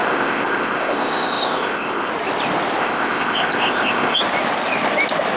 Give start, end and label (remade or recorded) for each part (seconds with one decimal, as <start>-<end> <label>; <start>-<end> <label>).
0.0-2.1 remade; 2.1-2.8 recorded; 2.8-4.2 remade; 4.2-5.4 recorded